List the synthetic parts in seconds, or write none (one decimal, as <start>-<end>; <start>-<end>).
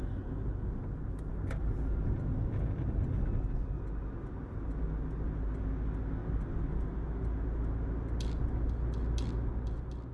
none